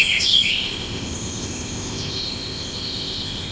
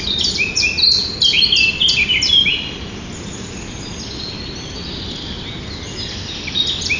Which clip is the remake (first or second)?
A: first